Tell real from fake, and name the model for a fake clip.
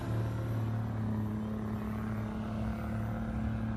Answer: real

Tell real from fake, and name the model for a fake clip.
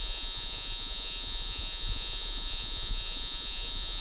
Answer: fake, vocoder, Vocos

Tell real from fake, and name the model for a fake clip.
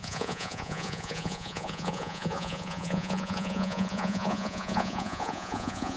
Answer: fake, vocoder, Vocos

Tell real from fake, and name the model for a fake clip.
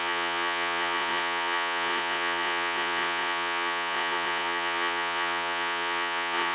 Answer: fake, vocoder, Vocos